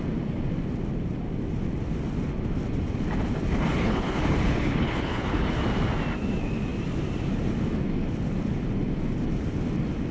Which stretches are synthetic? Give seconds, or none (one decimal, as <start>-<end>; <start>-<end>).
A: 3.7-5.6